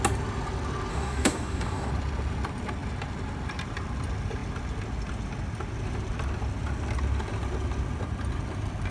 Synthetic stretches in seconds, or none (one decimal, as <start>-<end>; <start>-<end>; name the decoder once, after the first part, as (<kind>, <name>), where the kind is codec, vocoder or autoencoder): 0.9-1.9 (codec, DAC)

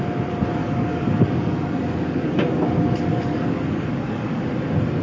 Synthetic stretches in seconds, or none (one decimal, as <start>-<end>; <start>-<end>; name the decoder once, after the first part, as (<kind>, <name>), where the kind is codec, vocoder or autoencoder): 0.6-2.3 (codec, DAC); 3.1-4.4

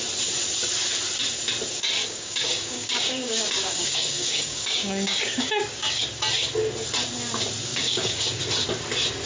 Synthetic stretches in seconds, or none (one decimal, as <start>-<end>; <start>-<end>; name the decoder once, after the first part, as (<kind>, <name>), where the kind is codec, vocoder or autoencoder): 2.0-6.0 (codec, DAC); 7.7-8.4

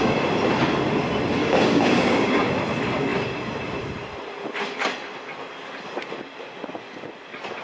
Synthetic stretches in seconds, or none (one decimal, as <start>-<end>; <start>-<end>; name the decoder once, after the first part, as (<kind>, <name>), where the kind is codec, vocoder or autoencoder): 1.4-2.5 (codec, DAC)

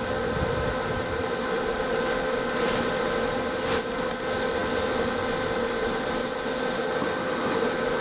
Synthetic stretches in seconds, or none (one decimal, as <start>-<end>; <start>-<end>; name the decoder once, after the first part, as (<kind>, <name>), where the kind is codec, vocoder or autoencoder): none

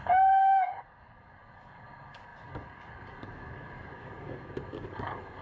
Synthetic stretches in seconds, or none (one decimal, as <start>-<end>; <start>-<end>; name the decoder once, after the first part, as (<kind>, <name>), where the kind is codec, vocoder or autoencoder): 0.0-5.4 (codec, DAC)

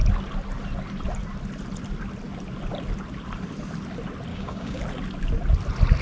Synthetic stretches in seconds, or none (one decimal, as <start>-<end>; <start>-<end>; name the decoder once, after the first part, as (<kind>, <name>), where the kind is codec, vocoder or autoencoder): 4.3-4.8 (codec, DAC)

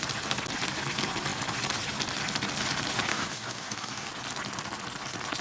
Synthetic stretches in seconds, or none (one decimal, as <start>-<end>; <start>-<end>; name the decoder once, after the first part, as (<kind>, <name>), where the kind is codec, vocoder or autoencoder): 3.1-4.1 (codec, DAC)